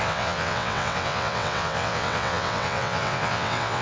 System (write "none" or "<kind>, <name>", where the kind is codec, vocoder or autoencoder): vocoder, WaveNeXt